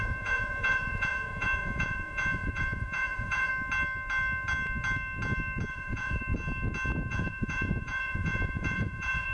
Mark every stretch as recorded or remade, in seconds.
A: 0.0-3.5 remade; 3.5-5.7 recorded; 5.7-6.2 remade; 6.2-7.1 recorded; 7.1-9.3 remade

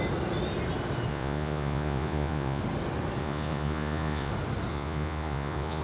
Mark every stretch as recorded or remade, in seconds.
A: 0.0-1.1 recorded; 1.1-2.6 remade; 2.6-3.2 recorded; 3.2-4.3 remade; 4.3-4.7 recorded; 4.7-5.8 remade

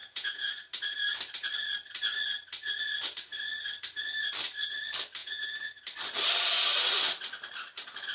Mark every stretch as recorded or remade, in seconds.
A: 0.0-0.5 remade; 0.5-5.2 recorded; 5.2-5.7 remade; 5.7-8.1 recorded